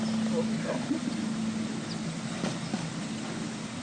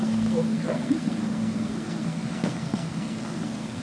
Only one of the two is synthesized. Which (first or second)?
second